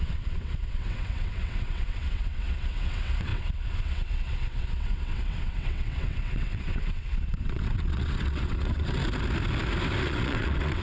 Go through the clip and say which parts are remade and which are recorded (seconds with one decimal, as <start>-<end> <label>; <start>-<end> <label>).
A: 0.0-9.0 remade; 9.0-10.0 recorded; 10.0-10.8 remade